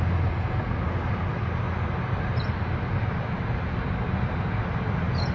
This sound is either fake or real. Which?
real